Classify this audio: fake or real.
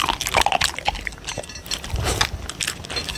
real